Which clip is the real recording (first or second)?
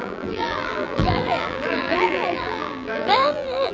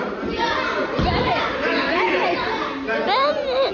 second